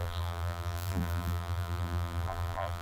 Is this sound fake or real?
fake